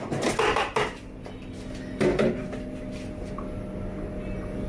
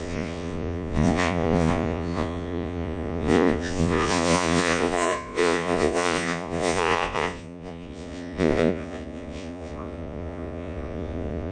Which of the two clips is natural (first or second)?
first